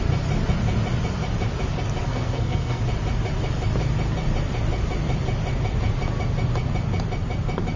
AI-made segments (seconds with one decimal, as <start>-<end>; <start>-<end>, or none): 2.0-2.8